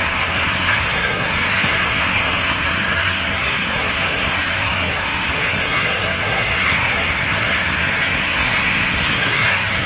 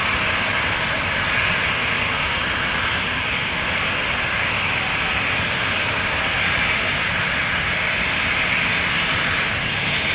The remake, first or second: first